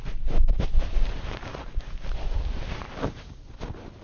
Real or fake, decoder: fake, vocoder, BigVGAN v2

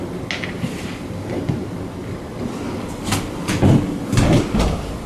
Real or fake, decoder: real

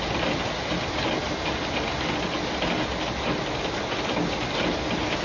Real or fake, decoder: real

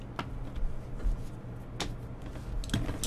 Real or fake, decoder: real